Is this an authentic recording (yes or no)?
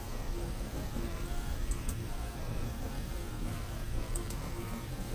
no